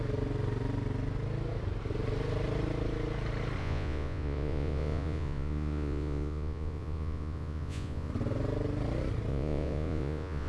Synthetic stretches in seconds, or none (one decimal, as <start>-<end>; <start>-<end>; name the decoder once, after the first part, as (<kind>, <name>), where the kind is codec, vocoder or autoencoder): 3.6-8.1 (vocoder, Vocos); 9.3-10.5